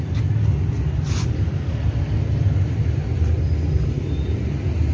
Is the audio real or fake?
real